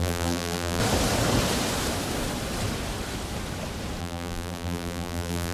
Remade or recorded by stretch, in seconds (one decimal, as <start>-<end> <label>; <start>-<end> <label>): 0.0-0.8 remade; 0.8-4.0 recorded; 4.0-5.5 remade